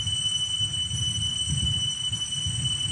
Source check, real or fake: real